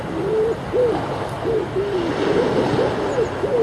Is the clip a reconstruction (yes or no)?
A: no